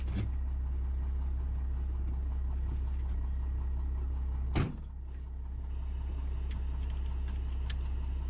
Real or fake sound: real